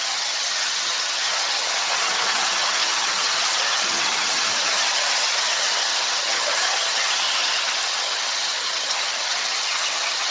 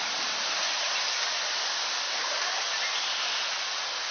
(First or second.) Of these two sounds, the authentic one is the second